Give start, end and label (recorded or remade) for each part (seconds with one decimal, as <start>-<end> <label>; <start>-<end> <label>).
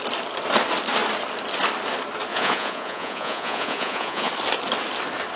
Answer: 0.0-2.3 recorded; 2.3-4.3 remade; 4.3-5.4 recorded